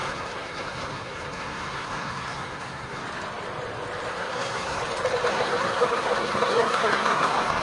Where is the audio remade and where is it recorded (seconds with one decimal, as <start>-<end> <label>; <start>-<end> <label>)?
0.0-3.0 remade; 3.0-4.1 recorded; 4.1-4.8 remade; 4.8-5.3 recorded; 5.3-7.6 remade